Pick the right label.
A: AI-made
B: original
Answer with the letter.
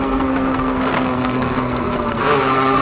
A